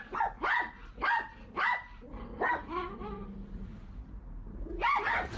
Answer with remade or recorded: recorded